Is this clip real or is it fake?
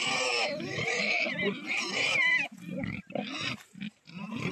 real